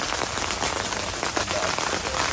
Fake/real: real